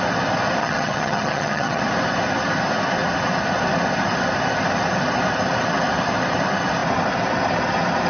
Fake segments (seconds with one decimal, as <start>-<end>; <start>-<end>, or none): 0.6-1.8